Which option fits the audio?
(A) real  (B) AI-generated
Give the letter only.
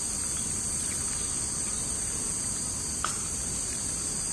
A